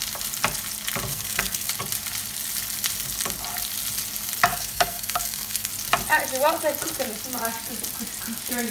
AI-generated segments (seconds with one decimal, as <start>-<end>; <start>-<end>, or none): 1.1-1.7; 4.5-5.7

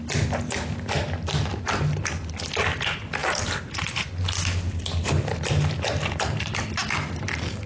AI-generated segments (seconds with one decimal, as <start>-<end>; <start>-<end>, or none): none

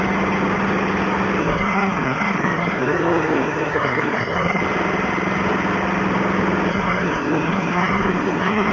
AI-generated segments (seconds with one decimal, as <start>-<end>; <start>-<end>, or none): 1.4-4.6; 6.7-8.7

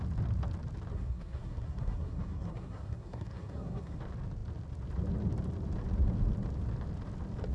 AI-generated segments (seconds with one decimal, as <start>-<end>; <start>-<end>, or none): 0.9-4.0

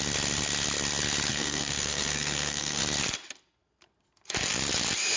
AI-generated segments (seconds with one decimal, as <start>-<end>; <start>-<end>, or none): 1.3-2.8

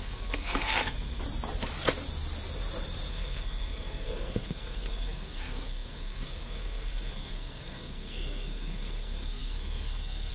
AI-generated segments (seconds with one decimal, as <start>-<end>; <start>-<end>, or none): 0.0-1.2; 3.1-10.3